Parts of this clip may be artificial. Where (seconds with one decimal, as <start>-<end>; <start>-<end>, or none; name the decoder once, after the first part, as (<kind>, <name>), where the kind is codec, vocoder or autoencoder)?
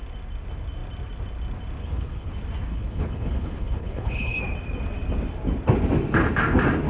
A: 1.8-2.3 (codec, HILCodec); 2.7-4.4